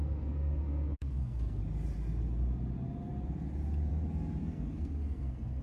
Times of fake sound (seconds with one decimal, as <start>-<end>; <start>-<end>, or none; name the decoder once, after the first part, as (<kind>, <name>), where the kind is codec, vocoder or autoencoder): 0.0-1.6 (codec, SNAC); 4.4-5.6